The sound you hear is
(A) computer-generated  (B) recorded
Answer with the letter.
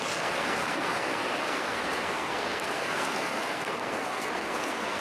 A